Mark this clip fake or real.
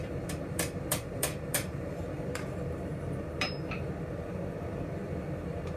fake